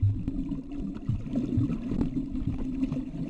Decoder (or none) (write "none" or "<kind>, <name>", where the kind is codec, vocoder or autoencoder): vocoder, BigVGAN v2